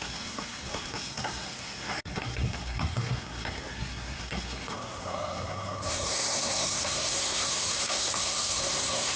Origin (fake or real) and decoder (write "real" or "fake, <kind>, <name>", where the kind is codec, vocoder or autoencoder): fake, codec, SNAC